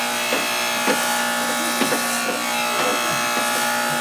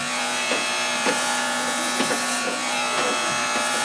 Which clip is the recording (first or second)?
first